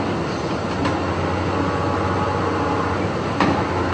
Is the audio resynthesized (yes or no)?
no